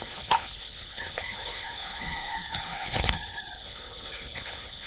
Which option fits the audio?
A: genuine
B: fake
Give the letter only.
B